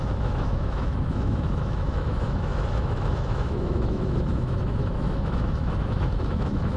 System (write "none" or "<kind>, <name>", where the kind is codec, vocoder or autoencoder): autoencoder, DAC-VAE